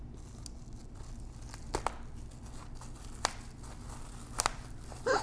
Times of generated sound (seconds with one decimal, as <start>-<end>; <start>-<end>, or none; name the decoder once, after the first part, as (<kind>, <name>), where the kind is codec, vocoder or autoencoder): none